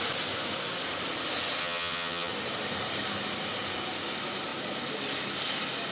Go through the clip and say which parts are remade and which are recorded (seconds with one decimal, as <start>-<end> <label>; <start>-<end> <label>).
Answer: 0.0-1.6 recorded; 1.6-2.3 remade; 2.3-5.9 recorded

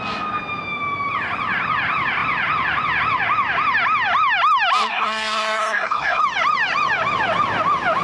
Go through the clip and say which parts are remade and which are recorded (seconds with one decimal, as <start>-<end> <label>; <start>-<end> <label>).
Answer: 0.0-4.9 recorded; 4.9-6.2 remade; 6.2-8.0 recorded

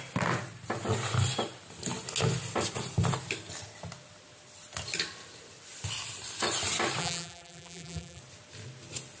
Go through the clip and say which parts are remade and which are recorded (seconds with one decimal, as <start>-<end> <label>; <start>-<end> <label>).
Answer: 0.0-7.0 recorded; 7.0-8.2 remade; 8.2-9.2 recorded

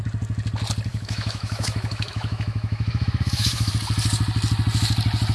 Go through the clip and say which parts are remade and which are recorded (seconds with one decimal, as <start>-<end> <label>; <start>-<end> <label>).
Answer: 0.0-0.9 recorded; 0.9-3.7 remade; 3.7-5.3 recorded